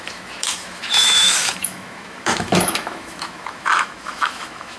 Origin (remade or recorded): remade